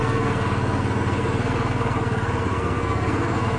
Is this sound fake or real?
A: fake